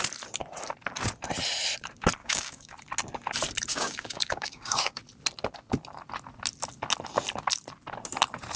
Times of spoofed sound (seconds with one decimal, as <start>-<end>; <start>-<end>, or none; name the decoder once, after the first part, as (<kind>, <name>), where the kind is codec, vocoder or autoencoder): 2.2-2.8 (codec, DAC); 3.7-5.0